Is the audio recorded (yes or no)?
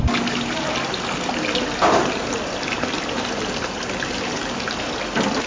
yes